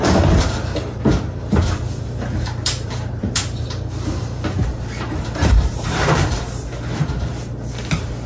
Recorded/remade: remade